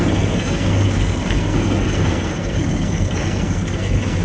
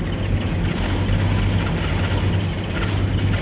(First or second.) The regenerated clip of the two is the first